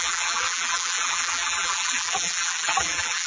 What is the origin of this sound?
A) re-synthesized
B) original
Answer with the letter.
A